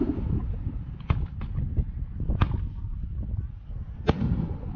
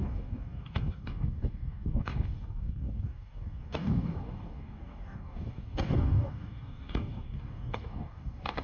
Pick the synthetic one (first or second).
second